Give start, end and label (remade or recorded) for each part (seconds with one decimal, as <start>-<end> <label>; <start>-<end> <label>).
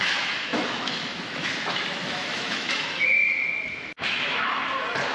0.0-3.2 remade; 3.2-3.7 recorded; 3.7-4.6 remade; 4.6-5.1 recorded